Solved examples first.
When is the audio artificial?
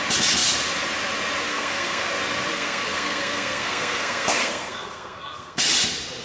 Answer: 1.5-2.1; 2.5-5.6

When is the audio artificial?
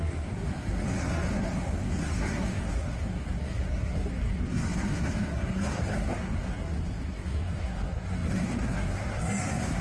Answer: 0.0-9.8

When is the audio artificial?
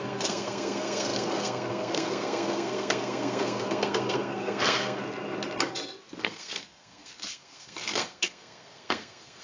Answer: 0.0-5.0; 6.2-9.4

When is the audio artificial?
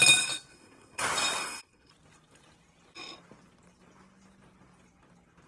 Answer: 0.5-1.0; 1.4-1.9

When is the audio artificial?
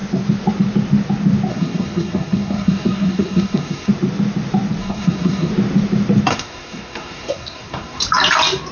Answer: 1.5-3.9; 4.8-5.5; 6.3-8.0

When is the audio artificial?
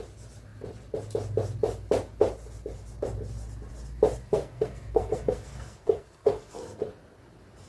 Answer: 4.2-6.8